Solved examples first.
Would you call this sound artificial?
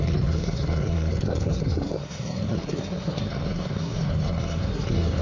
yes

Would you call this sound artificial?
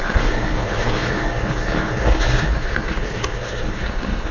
yes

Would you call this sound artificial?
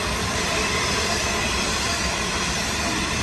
no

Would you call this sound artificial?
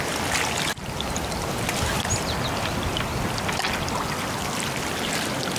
no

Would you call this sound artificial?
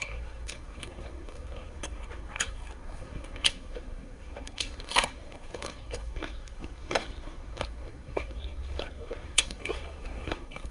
yes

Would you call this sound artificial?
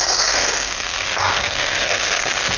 yes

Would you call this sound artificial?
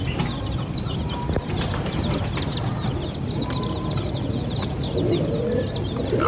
no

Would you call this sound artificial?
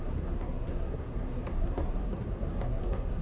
yes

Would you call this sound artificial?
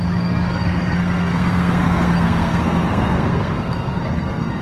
yes